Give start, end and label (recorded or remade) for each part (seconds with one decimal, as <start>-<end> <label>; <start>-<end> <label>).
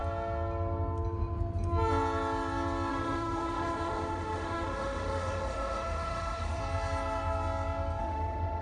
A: 0.0-2.9 recorded; 2.9-6.6 remade; 6.6-8.0 recorded; 8.0-8.6 remade